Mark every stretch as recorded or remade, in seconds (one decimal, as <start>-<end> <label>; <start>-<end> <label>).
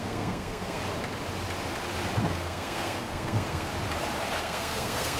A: 0.0-0.8 remade; 0.8-2.2 recorded; 2.2-3.7 remade; 3.7-4.4 recorded; 4.4-5.2 remade